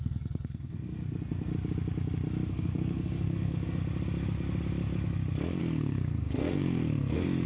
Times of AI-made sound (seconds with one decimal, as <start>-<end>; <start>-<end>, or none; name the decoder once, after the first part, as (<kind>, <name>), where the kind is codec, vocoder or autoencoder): 0.0-1.5 (codec, SNAC); 2.5-3.8; 5.6-7.5